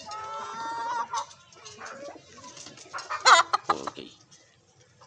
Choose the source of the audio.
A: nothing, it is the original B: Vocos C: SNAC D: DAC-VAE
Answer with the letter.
A